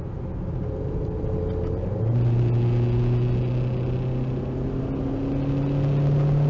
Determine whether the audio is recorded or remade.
recorded